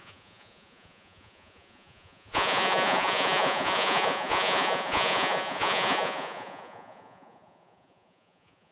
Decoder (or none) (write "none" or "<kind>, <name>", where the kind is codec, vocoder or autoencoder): vocoder, Vocos